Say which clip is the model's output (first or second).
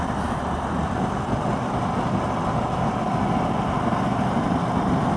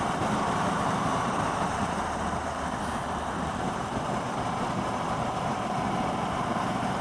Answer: second